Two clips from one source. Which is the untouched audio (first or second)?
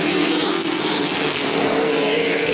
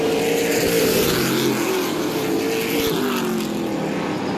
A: second